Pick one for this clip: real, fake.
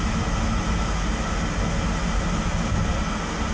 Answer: real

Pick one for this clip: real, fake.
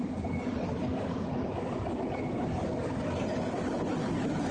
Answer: real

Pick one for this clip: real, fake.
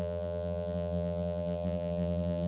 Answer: fake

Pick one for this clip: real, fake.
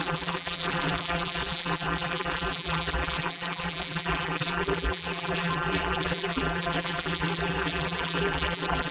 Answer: fake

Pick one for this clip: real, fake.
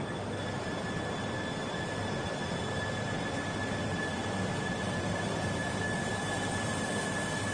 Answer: real